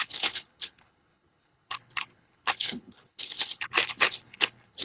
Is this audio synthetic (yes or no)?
yes